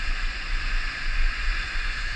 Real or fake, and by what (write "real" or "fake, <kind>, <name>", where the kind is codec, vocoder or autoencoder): fake, vocoder, Vocos